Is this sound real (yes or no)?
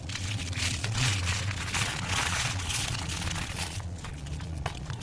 no